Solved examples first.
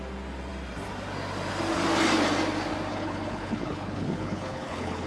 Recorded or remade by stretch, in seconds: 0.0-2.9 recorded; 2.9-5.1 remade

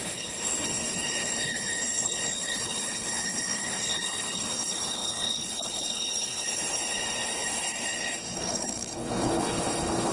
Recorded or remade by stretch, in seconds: 0.0-10.1 remade

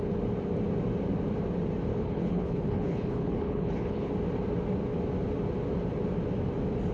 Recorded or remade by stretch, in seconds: 0.0-1.9 recorded; 1.9-4.1 remade; 4.1-6.9 recorded

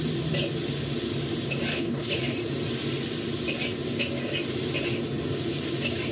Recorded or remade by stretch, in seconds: 0.0-1.7 recorded; 1.7-2.2 remade; 2.2-6.1 recorded

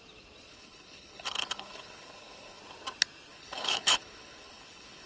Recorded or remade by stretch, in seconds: 0.0-0.5 recorded; 0.5-2.6 remade; 2.6-3.3 recorded; 3.3-5.1 remade